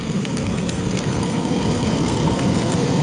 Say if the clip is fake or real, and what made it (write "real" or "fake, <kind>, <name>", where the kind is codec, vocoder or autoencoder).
fake, codec, SNAC